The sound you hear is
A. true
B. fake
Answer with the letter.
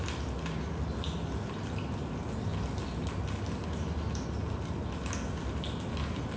A